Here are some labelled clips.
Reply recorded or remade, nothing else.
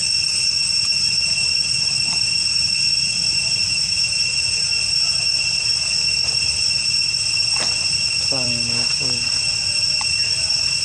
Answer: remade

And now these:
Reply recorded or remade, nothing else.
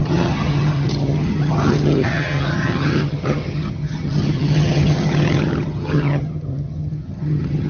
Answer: remade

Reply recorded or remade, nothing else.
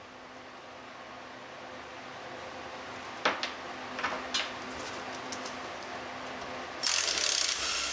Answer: recorded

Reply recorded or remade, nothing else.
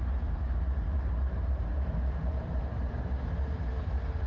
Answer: remade